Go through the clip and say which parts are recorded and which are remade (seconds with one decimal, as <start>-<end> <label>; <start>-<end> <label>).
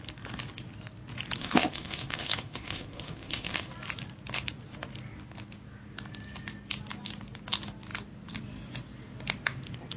0.0-1.4 recorded; 1.4-3.7 remade; 3.7-10.0 recorded